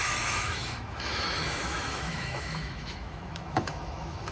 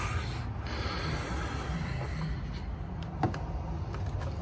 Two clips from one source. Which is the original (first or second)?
second